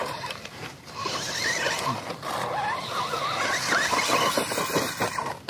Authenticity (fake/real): real